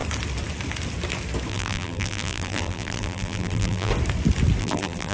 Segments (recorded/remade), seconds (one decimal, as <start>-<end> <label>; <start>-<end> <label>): 0.0-1.5 recorded; 1.5-3.9 remade; 3.9-4.6 recorded; 4.6-5.1 remade